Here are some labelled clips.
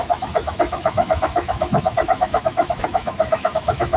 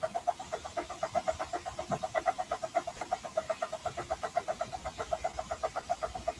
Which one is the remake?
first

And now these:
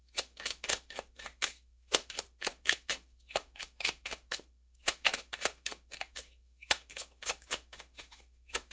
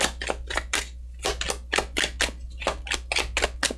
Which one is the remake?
first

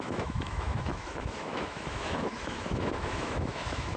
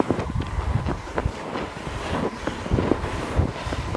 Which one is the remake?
first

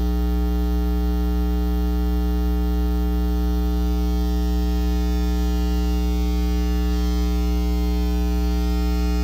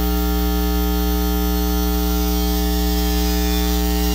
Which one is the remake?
second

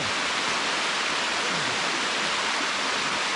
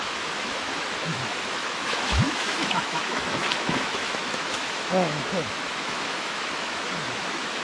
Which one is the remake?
second